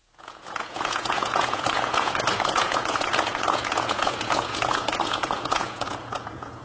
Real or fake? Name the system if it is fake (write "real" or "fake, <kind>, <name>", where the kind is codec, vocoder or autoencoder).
fake, vocoder, Vocos